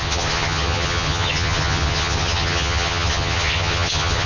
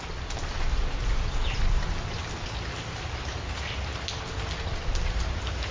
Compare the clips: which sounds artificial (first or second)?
first